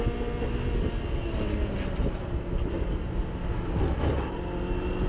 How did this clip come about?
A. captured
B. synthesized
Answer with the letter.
A